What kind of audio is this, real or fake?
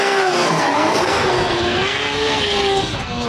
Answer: fake